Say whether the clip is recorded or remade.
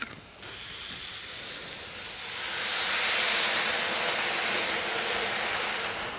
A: recorded